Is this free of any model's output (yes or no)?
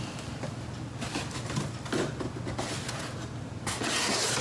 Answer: yes